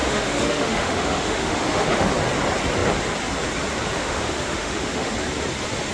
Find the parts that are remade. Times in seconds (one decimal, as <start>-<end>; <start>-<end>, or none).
0.0-2.1; 4.0-5.1